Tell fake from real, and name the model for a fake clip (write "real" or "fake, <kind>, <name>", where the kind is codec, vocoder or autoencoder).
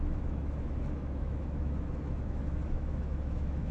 fake, autoencoder, DAC-VAE